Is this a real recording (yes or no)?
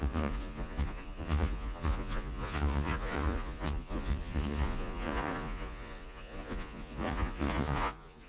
no